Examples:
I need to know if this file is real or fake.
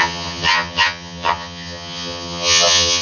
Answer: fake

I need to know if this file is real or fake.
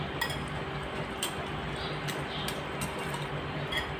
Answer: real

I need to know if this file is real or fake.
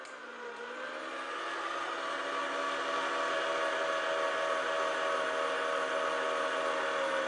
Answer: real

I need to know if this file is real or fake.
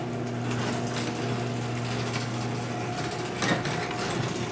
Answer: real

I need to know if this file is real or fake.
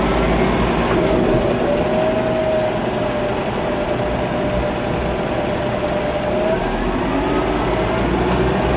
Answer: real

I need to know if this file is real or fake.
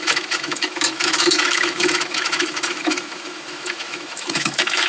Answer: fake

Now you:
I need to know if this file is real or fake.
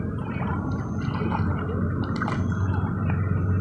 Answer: real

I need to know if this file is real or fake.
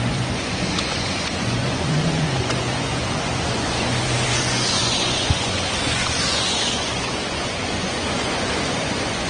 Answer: fake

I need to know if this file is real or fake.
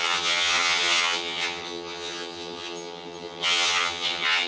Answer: fake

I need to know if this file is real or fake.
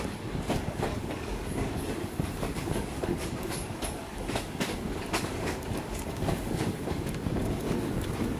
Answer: fake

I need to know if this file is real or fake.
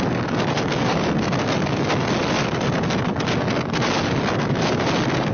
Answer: real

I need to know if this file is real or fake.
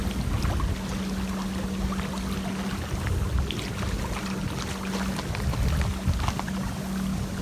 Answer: real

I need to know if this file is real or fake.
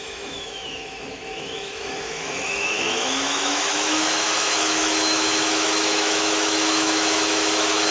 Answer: fake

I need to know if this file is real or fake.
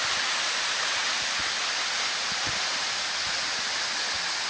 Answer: real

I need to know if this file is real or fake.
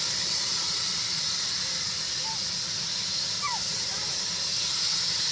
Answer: real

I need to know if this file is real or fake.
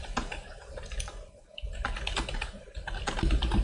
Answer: real